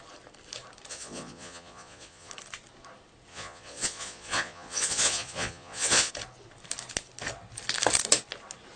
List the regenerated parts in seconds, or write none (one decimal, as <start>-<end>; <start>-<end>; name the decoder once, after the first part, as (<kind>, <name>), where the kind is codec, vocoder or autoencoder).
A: 0.9-2.3 (vocoder, Vocos); 3.3-6.1